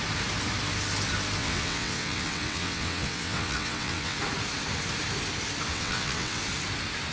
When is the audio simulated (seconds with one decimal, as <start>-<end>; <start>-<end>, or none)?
1.4-4.2; 5.7-6.4